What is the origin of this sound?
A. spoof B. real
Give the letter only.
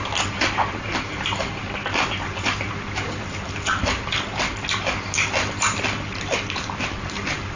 B